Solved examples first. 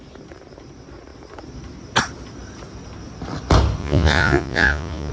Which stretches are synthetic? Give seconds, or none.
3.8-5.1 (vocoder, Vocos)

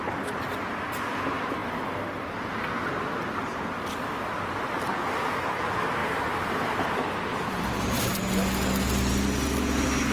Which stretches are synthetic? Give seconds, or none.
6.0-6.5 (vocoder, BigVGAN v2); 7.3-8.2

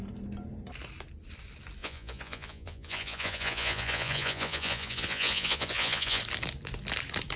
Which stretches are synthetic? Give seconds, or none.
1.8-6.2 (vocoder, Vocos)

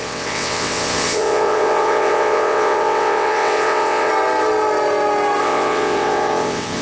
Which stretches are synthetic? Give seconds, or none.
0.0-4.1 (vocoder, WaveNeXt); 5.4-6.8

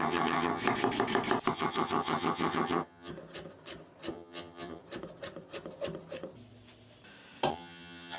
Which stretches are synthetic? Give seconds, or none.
0.0-0.6 (vocoder, HiFi-GAN); 1.5-3.1; 4.1-4.8; 7.5-8.2

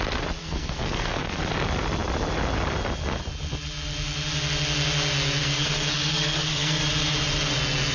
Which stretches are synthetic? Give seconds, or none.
0.4-1.4 (codec, SNAC); 5.4-6.8

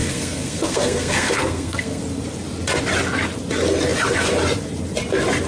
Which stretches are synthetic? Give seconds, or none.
0.0-2.0 (codec, SNAC)

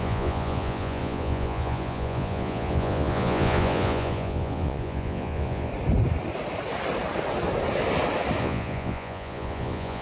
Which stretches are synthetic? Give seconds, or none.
0.0-5.7 (vocoder, Vocos); 8.4-10.0